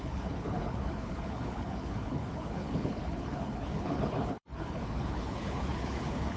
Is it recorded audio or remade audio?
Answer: remade